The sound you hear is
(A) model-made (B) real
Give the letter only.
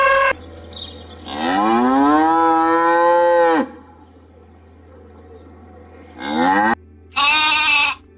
B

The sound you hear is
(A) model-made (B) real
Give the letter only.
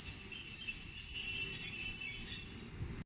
B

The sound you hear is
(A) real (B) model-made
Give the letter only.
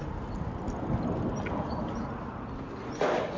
A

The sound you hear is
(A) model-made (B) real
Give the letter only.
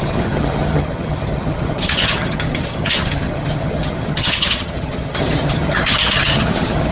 A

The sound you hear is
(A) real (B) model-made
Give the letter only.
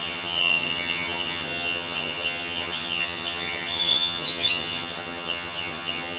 B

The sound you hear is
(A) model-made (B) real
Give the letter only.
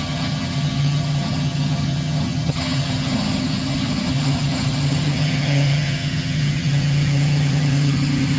A